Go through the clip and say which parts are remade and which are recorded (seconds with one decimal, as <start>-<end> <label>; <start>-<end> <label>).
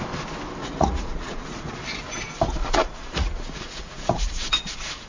0.0-0.6 recorded; 0.6-1.7 remade; 1.7-2.6 recorded; 2.6-5.1 remade